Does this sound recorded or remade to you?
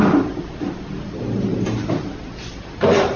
recorded